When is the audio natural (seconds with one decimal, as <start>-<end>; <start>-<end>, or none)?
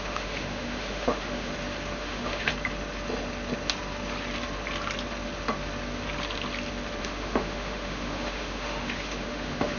1.5-2.0; 2.5-7.0